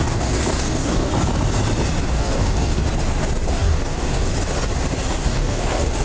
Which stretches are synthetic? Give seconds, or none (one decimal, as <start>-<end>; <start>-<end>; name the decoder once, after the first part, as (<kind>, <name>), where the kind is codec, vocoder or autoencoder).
0.0-1.1 (codec, DAC); 2.1-2.8; 3.5-4.3; 5.1-6.0